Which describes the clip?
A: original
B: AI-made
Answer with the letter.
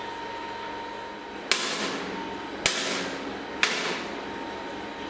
A